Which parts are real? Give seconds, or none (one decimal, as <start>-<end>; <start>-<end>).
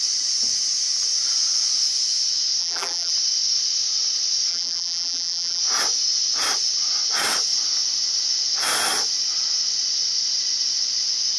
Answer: 0.0-2.6; 3.1-4.5; 5.6-11.4